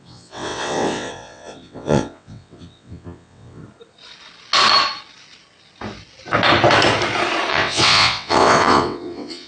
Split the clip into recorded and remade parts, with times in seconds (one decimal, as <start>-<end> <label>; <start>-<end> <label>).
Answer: 0.0-3.6 remade; 3.6-7.5 recorded; 7.5-9.5 remade

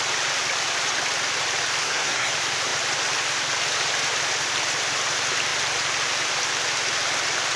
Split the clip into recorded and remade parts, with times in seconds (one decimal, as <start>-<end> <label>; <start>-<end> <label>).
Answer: 0.0-1.8 recorded; 1.8-2.3 remade; 2.3-7.6 recorded

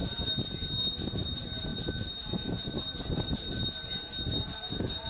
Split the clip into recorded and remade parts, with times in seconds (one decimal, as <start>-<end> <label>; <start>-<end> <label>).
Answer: 0.0-5.1 recorded

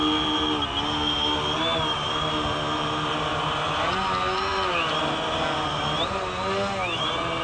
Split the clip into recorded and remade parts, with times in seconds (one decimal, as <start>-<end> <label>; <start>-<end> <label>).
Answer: 0.0-7.4 recorded

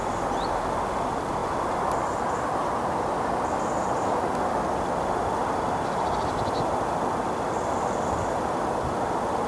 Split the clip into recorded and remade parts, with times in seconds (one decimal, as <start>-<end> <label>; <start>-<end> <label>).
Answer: 0.0-9.5 recorded

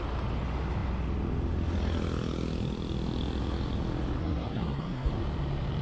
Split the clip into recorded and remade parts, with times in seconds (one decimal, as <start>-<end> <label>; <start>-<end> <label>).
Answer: 0.0-4.2 recorded; 4.2-5.1 remade; 5.1-5.8 recorded